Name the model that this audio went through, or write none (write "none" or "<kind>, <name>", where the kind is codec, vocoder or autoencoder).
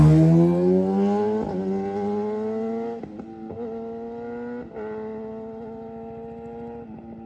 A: none